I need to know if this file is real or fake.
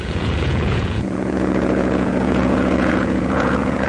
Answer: fake